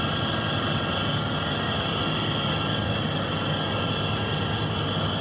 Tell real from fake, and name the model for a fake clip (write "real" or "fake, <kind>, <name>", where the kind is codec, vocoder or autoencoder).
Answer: real